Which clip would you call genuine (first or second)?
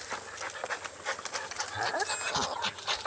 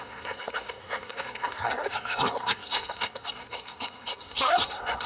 first